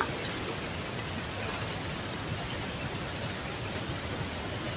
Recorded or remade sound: recorded